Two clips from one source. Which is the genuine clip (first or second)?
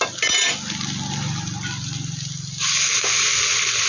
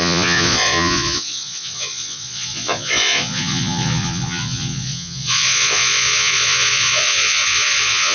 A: first